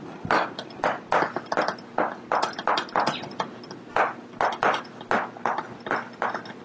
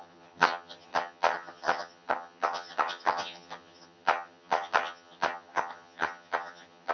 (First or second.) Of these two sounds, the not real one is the second